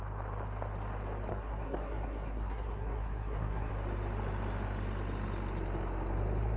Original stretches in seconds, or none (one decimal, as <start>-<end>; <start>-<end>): 0.0-1.3; 3.7-6.6